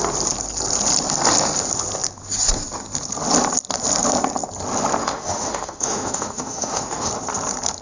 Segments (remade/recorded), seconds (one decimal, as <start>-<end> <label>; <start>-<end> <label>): 0.0-5.0 recorded; 5.0-7.1 remade; 7.1-7.8 recorded